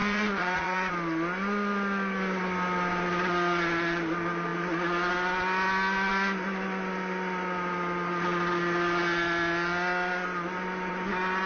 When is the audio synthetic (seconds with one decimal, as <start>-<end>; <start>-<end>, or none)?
0.0-0.9